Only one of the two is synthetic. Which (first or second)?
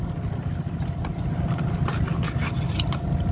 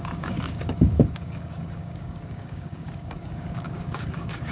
second